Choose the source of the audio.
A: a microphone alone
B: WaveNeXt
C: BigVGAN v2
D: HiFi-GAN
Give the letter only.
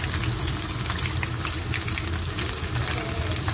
A